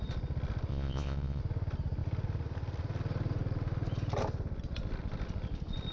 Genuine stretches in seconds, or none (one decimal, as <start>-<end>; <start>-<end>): 0.0-0.7; 1.4-5.9